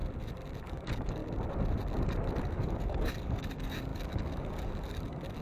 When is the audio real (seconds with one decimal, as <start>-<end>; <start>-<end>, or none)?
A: 0.0-0.6; 1.2-2.4